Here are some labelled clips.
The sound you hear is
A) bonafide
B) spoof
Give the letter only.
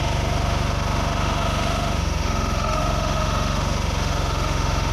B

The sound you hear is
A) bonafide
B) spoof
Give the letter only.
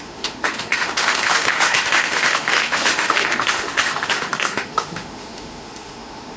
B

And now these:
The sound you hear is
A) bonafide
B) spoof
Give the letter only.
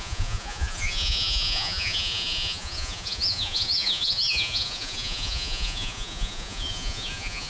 B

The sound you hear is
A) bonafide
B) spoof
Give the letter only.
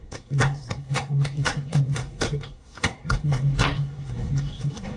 B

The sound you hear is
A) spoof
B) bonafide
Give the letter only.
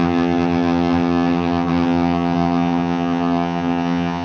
A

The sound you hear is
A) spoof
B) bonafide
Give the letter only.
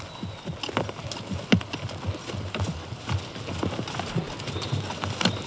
B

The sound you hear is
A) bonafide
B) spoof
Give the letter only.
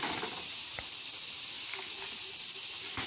A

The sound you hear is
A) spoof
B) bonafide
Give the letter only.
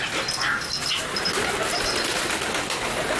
B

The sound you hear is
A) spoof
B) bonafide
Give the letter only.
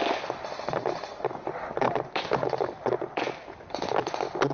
B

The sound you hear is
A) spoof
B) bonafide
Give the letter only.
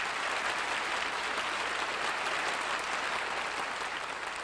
B